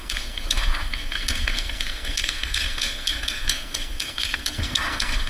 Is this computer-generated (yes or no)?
yes